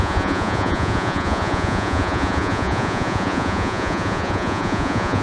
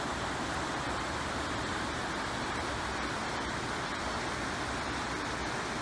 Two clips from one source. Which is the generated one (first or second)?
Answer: first